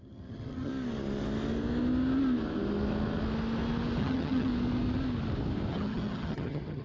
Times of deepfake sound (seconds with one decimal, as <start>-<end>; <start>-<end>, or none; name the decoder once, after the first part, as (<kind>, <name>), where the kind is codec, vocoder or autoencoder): 0.0-0.7 (vocoder, HiFi-GAN); 4.0-4.5; 5.7-6.8